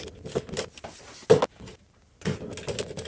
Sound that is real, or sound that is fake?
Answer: real